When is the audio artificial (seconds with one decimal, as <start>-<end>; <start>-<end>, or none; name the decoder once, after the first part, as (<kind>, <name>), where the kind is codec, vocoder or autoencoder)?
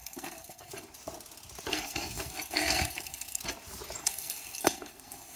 0.0-0.7 (codec, SNAC); 1.7-3.4; 4.0-5.4